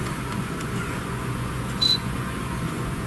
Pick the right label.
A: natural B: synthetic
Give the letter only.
B